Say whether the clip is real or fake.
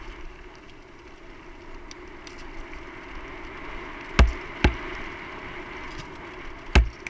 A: real